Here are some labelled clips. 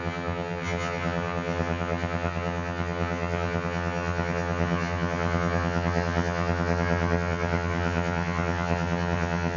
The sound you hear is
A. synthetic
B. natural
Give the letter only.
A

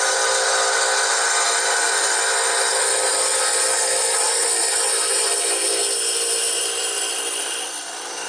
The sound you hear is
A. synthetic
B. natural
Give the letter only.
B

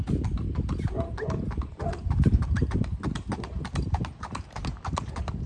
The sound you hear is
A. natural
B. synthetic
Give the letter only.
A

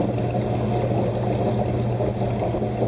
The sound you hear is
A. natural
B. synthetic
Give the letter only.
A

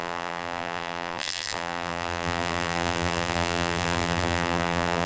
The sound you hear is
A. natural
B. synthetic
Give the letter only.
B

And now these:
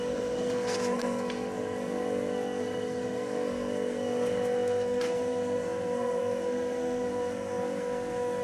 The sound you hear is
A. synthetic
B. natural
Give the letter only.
A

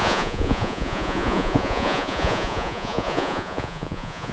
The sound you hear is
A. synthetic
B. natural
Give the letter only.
A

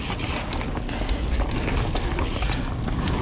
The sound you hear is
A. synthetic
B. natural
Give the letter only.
B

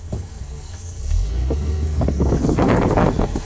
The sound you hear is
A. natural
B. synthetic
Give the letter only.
B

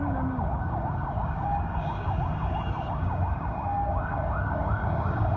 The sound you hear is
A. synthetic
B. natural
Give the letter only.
A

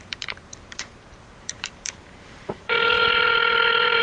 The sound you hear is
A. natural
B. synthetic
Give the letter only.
B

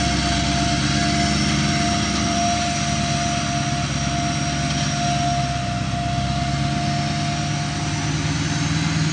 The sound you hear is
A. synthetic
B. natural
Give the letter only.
B